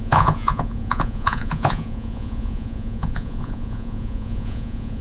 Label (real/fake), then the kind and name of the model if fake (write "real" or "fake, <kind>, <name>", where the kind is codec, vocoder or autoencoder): fake, vocoder, Vocos